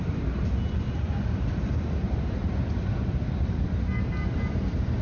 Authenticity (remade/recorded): recorded